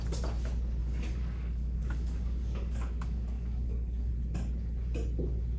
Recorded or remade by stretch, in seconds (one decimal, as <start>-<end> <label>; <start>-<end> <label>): 0.0-0.8 recorded; 0.8-4.1 remade; 4.1-5.6 recorded